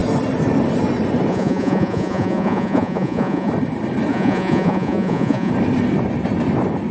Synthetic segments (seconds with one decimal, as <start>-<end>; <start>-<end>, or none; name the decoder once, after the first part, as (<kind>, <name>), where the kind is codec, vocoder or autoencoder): 1.3-3.5 (vocoder, Vocos); 4.1-5.5